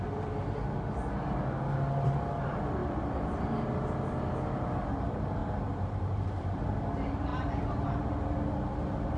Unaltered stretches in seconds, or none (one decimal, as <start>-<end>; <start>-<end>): 0.0-2.8; 3.5-5.4; 6.6-7.3; 7.9-9.2